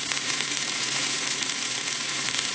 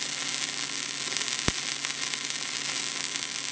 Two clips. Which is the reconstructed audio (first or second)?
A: first